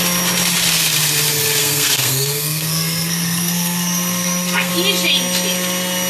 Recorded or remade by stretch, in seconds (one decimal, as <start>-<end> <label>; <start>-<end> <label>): 0.0-1.6 recorded; 1.6-4.7 remade; 4.7-6.1 recorded